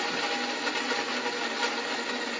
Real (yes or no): yes